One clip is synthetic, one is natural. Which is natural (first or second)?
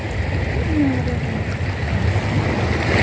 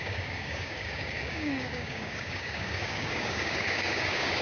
first